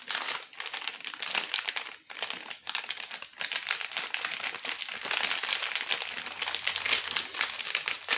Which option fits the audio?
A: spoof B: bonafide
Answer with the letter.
B